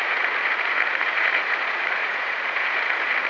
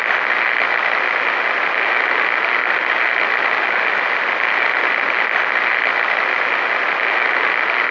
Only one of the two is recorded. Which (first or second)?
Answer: second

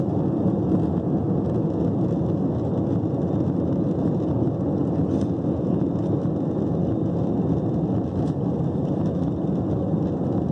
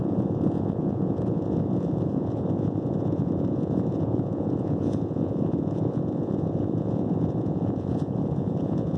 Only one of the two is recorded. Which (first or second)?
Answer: first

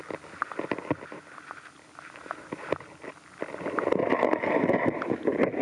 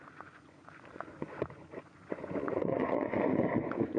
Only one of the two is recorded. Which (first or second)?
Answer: first